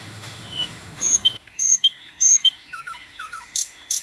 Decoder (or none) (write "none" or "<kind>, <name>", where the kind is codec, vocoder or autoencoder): autoencoder, DAC-VAE